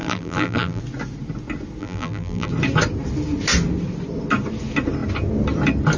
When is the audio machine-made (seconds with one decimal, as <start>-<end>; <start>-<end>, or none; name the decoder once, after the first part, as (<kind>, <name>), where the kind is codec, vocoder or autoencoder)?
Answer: 0.0-0.8 (vocoder, BigVGAN v2); 1.8-2.5

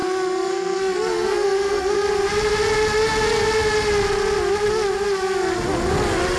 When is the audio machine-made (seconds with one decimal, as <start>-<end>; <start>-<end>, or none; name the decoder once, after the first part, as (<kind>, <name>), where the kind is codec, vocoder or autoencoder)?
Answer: 0.0-2.1 (codec, SNAC)

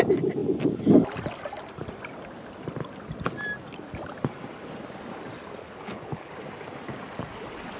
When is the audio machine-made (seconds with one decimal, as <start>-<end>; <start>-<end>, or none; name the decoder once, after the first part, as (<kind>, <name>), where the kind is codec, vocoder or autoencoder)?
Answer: 5.6-6.3 (codec, HILCodec)

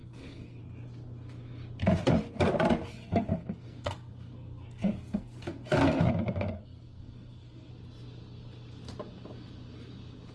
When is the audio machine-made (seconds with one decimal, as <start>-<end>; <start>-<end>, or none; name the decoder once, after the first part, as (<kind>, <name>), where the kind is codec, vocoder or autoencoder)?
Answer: 0.0-0.6 (codec, SNAC); 2.9-7.7